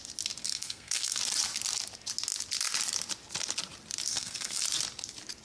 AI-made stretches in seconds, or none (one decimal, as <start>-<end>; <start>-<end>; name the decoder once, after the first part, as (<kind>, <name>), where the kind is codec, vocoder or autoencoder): 0.4-1.2 (codec, SNAC); 4.1-4.6